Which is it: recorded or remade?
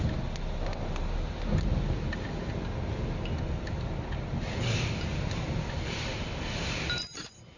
recorded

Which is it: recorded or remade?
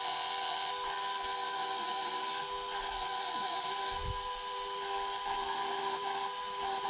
recorded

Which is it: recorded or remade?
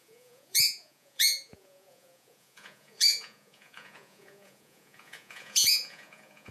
remade